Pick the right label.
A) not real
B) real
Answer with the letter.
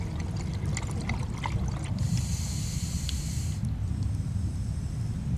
B